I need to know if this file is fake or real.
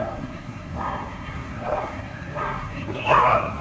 fake